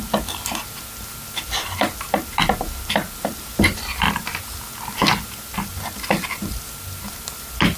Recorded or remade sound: recorded